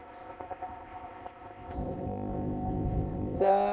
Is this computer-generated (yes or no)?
yes